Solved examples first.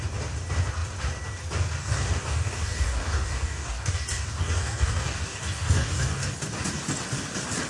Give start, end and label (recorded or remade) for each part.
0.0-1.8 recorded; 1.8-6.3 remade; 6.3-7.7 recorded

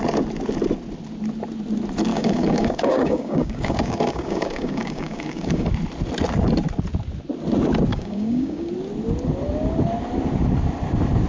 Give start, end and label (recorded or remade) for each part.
0.0-2.1 recorded; 2.1-5.7 remade; 5.7-7.9 recorded; 7.9-8.7 remade; 8.7-11.3 recorded

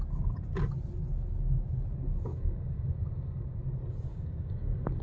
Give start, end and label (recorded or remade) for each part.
0.0-2.3 recorded; 2.3-3.6 remade; 3.6-4.1 recorded; 4.1-5.0 remade

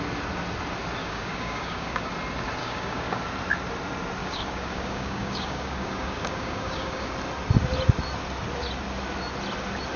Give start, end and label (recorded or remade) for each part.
0.0-1.0 recorded; 1.0-2.1 remade; 2.1-2.6 recorded; 2.6-3.2 remade; 3.2-4.2 recorded; 4.2-7.1 remade; 7.1-10.0 recorded

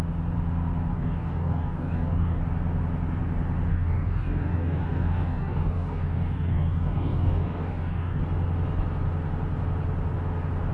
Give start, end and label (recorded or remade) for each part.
0.0-0.9 recorded; 0.9-2.4 remade; 2.4-3.7 recorded; 3.7-8.2 remade; 8.2-10.7 recorded